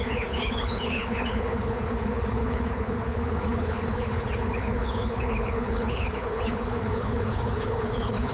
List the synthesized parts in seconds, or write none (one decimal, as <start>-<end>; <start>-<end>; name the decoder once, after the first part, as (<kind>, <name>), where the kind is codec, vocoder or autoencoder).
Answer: 0.0-8.3 (codec, HILCodec)